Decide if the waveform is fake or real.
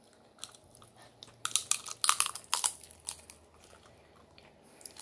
real